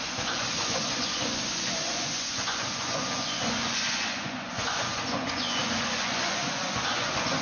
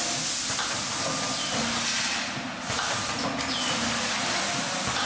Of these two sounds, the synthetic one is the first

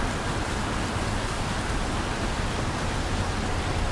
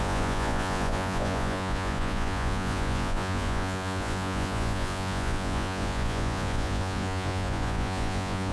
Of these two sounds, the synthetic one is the second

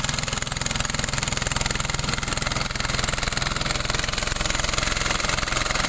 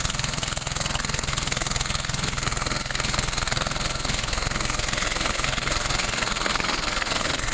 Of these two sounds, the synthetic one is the second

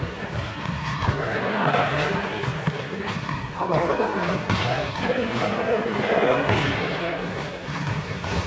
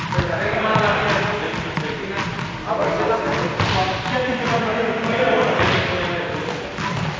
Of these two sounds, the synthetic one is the first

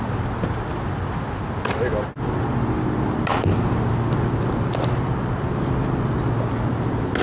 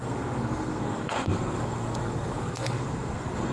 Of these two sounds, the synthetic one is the second